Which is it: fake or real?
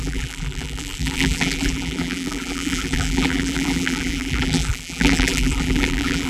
fake